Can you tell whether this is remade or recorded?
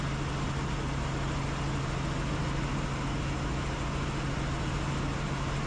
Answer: recorded